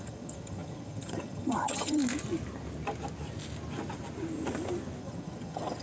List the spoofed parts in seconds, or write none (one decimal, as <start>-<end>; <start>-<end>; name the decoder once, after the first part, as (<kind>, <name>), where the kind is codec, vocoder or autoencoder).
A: 0.0-2.0 (vocoder, HiFi-GAN); 5.0-5.8